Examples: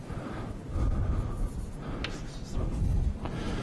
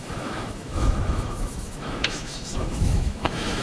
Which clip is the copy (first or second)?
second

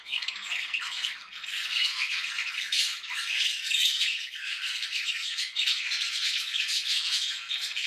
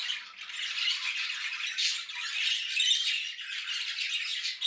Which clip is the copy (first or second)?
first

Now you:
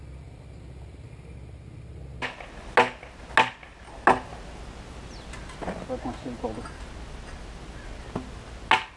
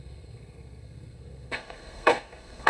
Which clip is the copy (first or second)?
second